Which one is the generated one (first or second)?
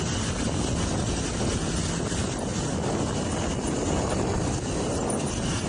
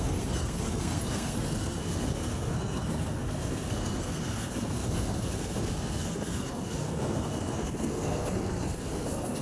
second